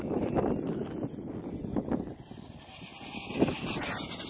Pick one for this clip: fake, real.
real